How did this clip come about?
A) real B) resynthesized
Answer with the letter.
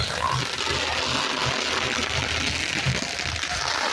A